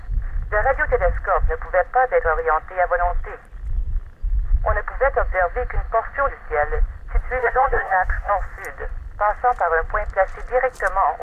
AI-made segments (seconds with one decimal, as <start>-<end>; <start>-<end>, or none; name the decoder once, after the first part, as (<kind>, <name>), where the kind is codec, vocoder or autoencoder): 7.4-8.3 (autoencoder, DAC-VAE)